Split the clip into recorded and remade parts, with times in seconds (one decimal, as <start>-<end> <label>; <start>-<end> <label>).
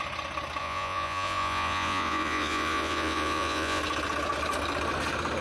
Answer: 0.0-0.6 recorded; 0.6-3.8 remade; 3.8-5.4 recorded